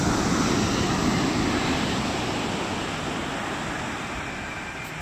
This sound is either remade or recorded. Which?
recorded